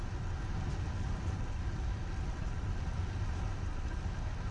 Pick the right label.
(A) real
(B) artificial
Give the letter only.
A